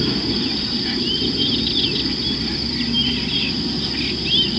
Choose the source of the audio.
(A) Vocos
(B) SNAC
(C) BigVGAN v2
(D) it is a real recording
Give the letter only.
D